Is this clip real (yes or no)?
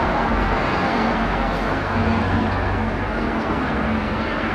no